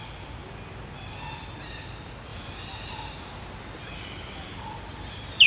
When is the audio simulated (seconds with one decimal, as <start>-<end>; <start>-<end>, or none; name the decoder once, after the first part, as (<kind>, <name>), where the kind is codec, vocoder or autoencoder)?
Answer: none

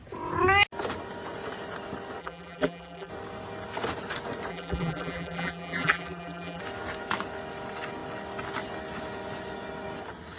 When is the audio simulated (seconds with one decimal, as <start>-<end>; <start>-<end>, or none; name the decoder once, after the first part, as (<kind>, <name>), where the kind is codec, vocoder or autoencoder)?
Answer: 2.2-3.1 (vocoder, BigVGAN v2); 4.5-6.6

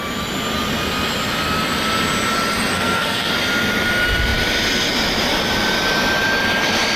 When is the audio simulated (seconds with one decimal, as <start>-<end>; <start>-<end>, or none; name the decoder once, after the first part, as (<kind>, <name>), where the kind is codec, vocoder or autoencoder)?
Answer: 2.7-3.3 (codec, SNAC)

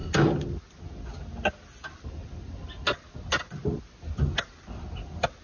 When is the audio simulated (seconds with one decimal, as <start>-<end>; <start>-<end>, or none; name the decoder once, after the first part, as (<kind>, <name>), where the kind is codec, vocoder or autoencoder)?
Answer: none